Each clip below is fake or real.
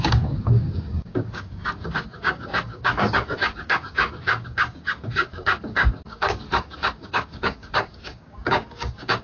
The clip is fake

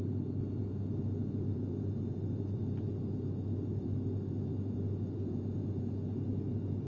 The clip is real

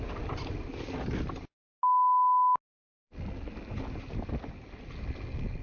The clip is real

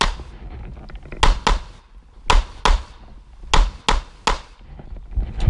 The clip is real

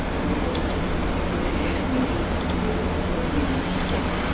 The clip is real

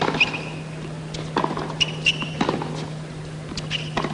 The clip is real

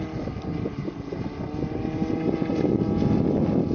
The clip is real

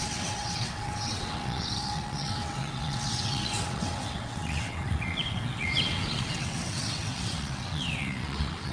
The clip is fake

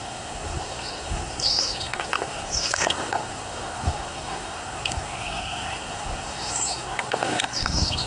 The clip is fake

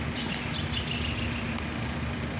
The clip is real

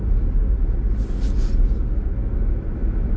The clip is real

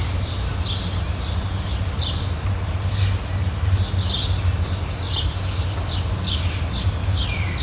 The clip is real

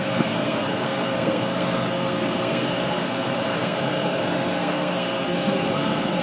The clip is fake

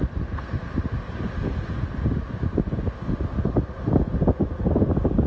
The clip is real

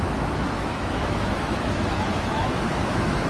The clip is fake